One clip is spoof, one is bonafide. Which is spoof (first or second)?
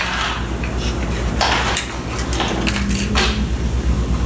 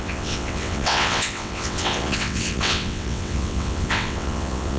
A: second